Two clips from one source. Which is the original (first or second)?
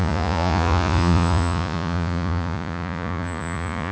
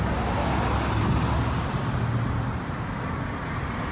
second